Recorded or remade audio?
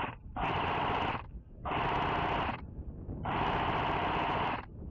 recorded